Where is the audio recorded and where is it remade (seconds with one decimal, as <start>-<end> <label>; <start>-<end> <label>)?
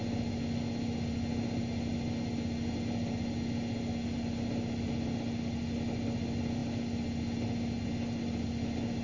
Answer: 0.0-9.0 recorded